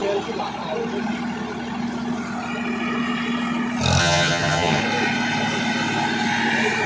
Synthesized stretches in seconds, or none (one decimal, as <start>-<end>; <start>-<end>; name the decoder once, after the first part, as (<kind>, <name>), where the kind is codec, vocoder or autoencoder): 4.0-4.8 (vocoder, HiFi-GAN)